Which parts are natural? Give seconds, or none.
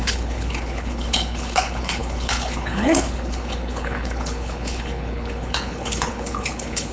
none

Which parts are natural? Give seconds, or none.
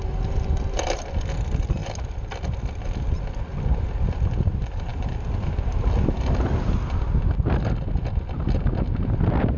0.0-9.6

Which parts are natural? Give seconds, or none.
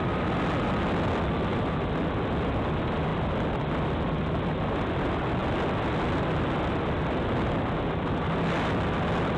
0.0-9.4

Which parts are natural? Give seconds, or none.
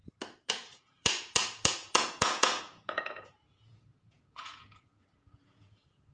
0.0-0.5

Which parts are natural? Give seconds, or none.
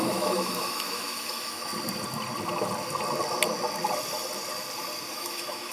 1.7-5.1